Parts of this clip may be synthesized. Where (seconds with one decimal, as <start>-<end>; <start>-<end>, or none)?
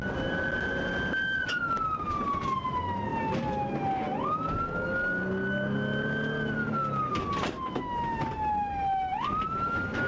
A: none